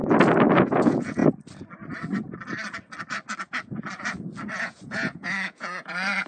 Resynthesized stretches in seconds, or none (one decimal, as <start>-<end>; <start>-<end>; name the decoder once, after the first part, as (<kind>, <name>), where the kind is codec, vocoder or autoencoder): 0.6-1.2 (vocoder, Vocos); 4.6-6.3